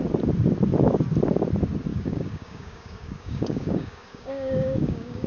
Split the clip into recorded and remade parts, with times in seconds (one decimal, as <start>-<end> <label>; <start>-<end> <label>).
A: 0.0-1.9 recorded; 1.9-5.3 remade